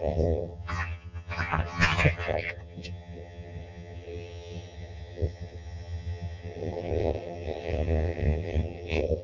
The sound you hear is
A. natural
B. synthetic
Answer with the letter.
B